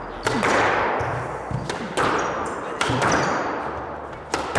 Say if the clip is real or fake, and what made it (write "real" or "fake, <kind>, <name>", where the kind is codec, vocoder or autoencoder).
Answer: real